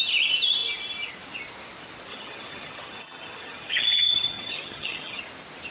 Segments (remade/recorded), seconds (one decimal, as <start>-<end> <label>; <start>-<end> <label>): 0.0-2.1 recorded; 2.1-5.2 remade; 5.2-5.7 recorded